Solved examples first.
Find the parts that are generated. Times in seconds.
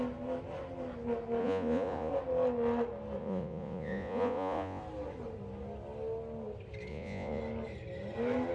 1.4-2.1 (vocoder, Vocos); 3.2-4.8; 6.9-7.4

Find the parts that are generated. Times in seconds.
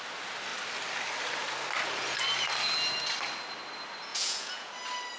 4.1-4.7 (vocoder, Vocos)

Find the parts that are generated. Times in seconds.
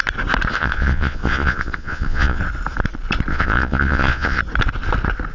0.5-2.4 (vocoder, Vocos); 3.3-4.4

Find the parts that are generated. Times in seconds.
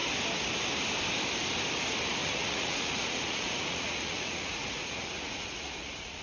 2.2-6.2 (vocoder, Vocos)